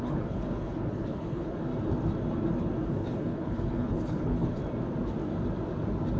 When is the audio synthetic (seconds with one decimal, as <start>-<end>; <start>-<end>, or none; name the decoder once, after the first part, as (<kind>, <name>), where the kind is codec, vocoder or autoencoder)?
0.0-1.7 (codec, HILCodec); 2.9-4.6

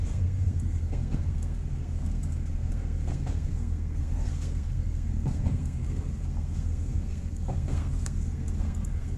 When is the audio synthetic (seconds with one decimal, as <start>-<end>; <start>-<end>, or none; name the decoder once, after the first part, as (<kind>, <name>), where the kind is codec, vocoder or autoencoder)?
0.0-9.2 (codec, SNAC)

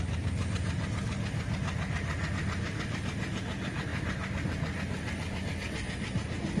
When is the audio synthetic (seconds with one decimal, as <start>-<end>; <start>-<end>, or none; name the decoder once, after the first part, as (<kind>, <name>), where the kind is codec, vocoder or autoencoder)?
none